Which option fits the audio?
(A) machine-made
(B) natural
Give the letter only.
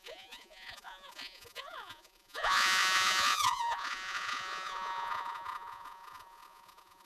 A